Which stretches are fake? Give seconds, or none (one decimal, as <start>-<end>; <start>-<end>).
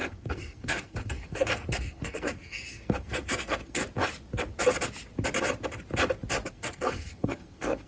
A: 0.0-3.8; 6.5-7.9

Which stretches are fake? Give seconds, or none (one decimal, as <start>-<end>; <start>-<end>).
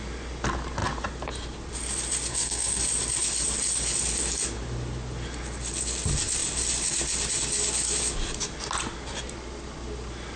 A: 2.3-2.8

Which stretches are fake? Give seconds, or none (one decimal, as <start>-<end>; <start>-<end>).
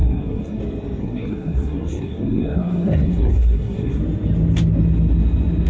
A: 0.0-0.6; 1.0-4.0